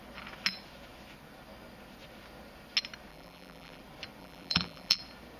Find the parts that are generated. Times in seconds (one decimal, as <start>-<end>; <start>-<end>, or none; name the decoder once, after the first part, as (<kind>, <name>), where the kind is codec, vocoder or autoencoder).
3.1-3.8 (vocoder, BigVGAN v2); 4.2-5.0